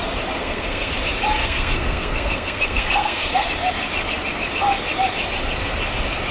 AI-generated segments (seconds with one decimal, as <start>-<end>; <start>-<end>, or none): 0.4-0.9; 1.4-3.5